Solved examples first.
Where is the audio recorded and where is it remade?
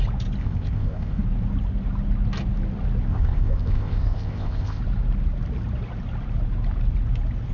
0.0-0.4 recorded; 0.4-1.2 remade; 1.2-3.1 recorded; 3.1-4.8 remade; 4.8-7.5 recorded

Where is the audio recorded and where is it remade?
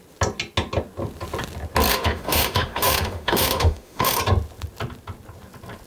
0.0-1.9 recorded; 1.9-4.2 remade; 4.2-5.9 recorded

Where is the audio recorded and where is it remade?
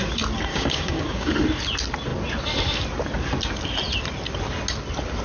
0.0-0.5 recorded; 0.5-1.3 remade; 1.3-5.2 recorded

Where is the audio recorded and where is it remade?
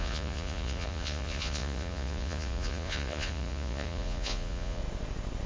0.0-4.8 remade; 4.8-5.5 recorded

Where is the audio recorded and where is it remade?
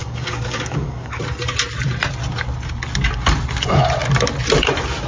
0.0-1.2 remade; 1.2-5.1 recorded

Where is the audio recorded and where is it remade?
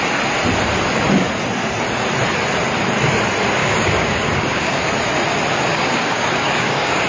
0.0-3.6 recorded; 3.6-4.8 remade; 4.8-5.7 recorded; 5.7-7.1 remade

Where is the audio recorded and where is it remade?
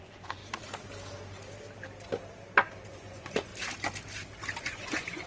0.0-0.4 remade; 0.4-2.9 recorded; 2.9-3.5 remade; 3.5-4.6 recorded; 4.6-5.3 remade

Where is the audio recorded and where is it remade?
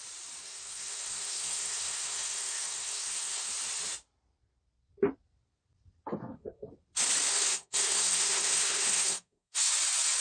0.0-0.4 recorded; 0.4-3.5 remade; 3.5-6.2 recorded; 6.2-6.7 remade; 6.7-7.3 recorded; 7.3-9.7 remade; 9.7-10.2 recorded